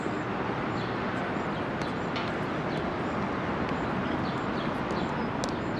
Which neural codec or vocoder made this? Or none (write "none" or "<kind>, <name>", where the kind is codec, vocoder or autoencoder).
none